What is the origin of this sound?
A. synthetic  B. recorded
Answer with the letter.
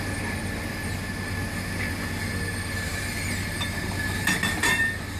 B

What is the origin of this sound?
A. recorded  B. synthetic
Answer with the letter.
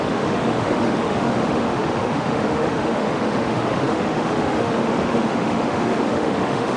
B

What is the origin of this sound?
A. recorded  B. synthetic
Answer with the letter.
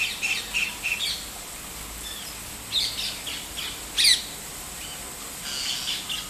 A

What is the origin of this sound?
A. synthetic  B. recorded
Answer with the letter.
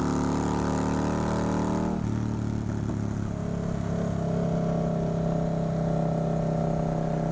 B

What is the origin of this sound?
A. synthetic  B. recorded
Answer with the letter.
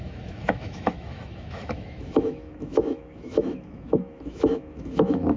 A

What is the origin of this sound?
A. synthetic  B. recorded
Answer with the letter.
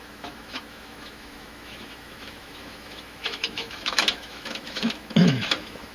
A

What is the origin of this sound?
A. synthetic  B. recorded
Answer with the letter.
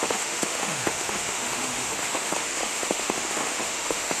A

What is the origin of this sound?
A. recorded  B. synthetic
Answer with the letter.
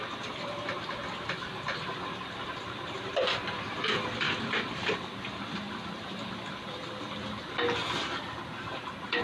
A